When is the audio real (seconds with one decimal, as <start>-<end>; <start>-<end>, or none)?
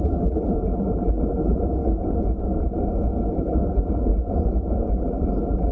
1.8-3.3; 4.1-4.9